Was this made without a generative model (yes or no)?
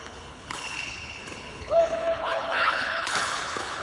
no